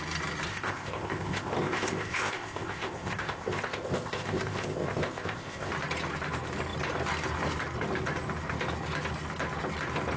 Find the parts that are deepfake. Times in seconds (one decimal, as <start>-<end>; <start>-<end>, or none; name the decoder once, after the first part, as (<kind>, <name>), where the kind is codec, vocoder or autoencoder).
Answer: 0.5-5.7 (codec, ZipCodec)